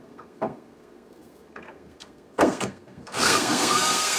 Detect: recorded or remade remade